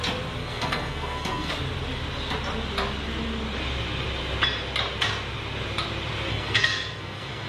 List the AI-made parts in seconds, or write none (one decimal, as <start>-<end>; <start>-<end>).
0.4-1.5; 6.3-7.5